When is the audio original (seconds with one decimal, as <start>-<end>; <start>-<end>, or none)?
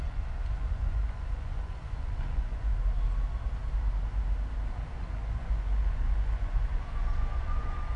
2.7-4.9